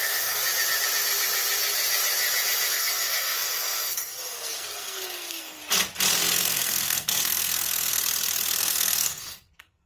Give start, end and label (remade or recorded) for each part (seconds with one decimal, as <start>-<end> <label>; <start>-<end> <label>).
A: 0.0-0.4 remade; 0.4-2.7 recorded; 2.7-5.6 remade; 5.6-6.3 recorded; 6.3-8.0 remade; 8.0-8.6 recorded; 8.6-9.9 remade